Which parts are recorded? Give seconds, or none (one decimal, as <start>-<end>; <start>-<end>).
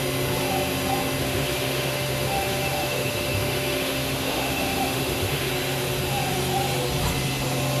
0.0-1.2; 5.5-7.8